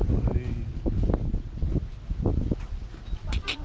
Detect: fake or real real